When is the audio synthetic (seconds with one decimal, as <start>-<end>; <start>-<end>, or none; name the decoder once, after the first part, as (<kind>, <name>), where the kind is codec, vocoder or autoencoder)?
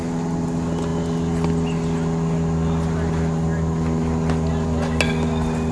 none